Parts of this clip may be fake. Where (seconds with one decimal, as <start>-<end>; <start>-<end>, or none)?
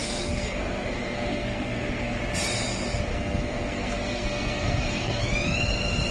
0.0-2.2; 3.1-5.2